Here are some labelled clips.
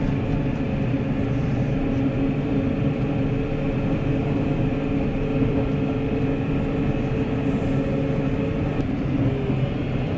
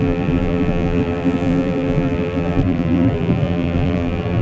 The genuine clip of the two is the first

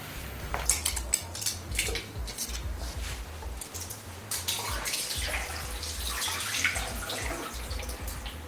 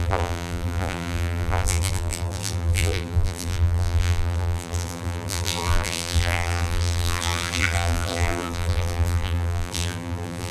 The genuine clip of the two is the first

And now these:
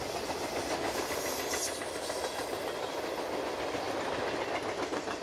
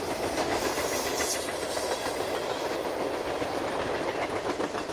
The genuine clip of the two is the first